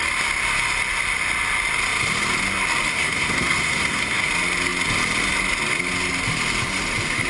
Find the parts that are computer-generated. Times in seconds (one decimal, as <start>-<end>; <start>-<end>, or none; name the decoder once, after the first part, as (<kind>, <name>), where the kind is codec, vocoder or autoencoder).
2.9-4.3 (codec, SNAC)